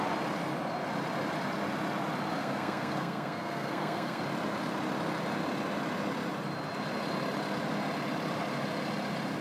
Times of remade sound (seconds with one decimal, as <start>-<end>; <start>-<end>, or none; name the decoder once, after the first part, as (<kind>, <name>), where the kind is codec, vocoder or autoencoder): 2.4-4.2 (codec, SNAC)